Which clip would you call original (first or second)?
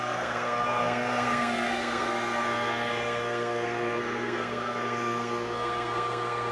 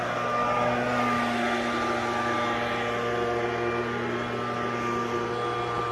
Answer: second